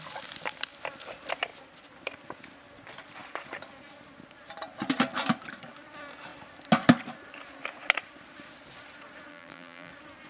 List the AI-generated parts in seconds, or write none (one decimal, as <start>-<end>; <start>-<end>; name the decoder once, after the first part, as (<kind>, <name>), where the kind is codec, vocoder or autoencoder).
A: 9.3-9.9 (vocoder, BigVGAN v2)